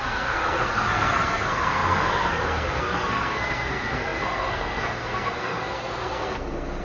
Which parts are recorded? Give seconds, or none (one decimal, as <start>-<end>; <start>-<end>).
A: none